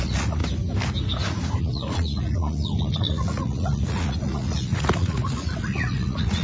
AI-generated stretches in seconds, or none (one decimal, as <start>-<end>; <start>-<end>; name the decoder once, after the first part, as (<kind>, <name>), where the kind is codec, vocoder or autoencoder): 0.0-0.4 (vocoder, Vocos); 1.6-6.4

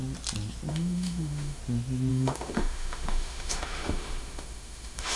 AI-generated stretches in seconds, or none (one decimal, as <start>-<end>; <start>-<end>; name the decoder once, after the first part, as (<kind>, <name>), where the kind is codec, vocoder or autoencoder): 0.7-1.6 (autoencoder, DAC-VAE); 2.1-5.2